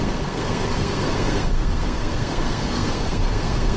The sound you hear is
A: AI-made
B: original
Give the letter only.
A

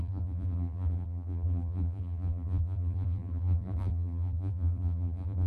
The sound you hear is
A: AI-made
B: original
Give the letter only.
A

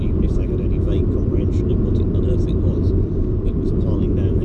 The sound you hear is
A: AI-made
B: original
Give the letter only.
B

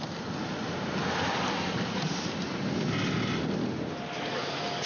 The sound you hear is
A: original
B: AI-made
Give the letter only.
A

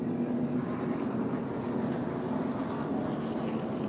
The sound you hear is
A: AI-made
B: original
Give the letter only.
B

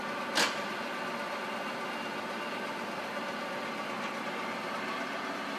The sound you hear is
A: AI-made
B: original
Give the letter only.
B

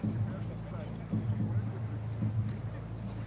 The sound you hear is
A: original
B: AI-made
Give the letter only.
A